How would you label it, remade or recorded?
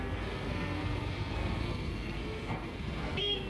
remade